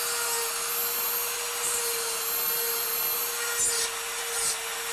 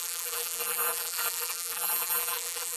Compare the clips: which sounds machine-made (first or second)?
second